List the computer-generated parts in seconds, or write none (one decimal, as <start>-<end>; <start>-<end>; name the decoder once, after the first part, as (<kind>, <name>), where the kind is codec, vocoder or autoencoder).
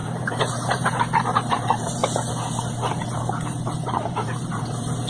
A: 0.0-2.0 (vocoder, BigVGAN v2); 3.4-5.1